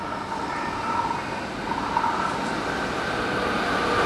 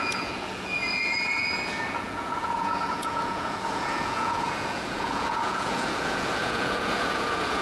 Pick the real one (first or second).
first